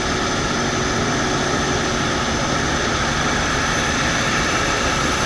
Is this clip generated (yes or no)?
no